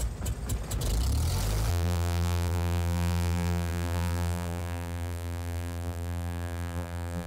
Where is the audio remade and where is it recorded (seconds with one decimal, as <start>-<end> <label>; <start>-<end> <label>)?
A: 0.0-1.7 recorded; 1.7-7.3 remade